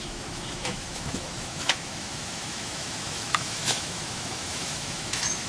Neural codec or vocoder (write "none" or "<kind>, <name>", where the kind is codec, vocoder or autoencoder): autoencoder, DAC-VAE